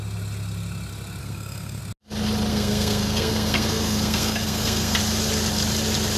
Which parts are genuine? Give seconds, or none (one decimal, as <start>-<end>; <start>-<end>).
0.0-1.2; 1.8-2.5; 5.0-6.2